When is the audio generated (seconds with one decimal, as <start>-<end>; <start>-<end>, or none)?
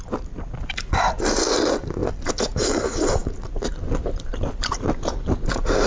none